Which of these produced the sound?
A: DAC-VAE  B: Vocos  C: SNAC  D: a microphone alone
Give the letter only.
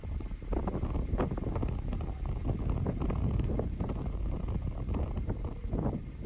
D